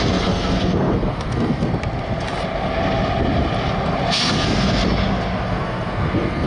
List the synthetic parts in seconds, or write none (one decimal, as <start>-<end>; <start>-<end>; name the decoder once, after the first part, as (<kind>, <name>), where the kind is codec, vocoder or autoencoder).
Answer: 0.0-1.7 (codec, SNAC); 4.1-4.8; 5.4-6.5